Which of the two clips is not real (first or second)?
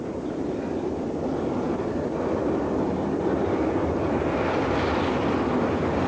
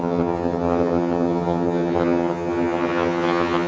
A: second